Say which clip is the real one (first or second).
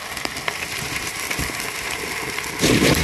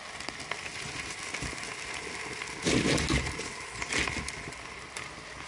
second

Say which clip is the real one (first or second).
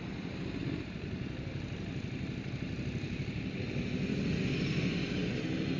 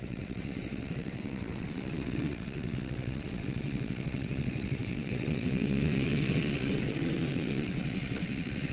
first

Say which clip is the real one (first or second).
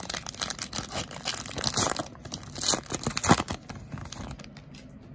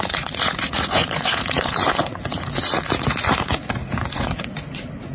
first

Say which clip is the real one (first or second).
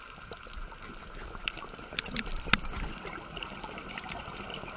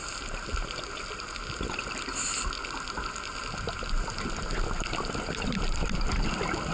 second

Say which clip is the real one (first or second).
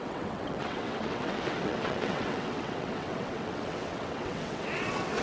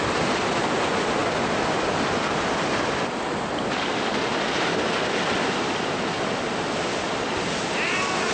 second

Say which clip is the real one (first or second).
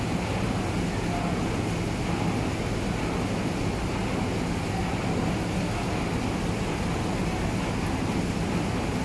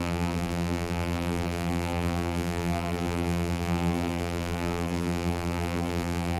first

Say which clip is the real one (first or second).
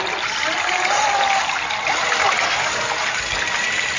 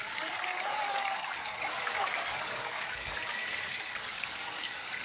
first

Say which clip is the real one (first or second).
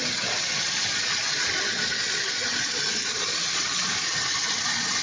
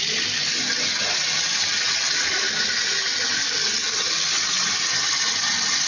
second